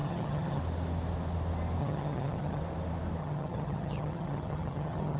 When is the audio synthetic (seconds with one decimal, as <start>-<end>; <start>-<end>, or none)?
0.0-0.6; 1.8-2.6; 3.2-5.2